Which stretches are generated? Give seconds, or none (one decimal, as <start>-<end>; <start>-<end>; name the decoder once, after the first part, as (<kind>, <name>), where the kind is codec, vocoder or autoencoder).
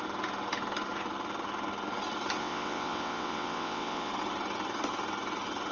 2.4-4.1 (vocoder, WaveNeXt)